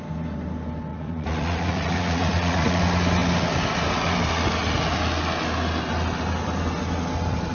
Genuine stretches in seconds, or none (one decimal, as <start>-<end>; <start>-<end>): 0.0-0.9; 2.8-7.5